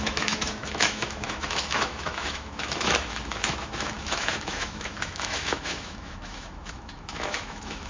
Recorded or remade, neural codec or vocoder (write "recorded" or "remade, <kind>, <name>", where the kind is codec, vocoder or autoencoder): remade, autoencoder, DAC-VAE